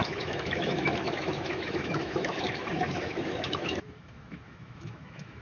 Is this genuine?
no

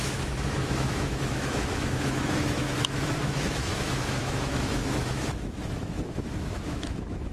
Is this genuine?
no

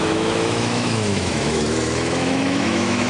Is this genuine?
no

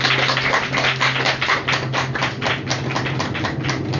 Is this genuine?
yes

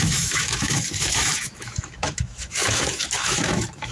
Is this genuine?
no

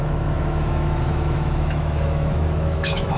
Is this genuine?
no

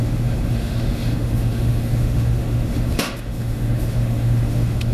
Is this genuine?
no